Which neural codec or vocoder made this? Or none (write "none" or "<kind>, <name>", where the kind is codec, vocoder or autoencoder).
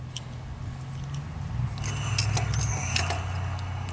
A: none